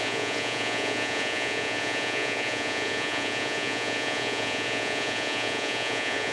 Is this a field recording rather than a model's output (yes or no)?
no